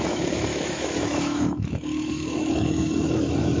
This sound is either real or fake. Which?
fake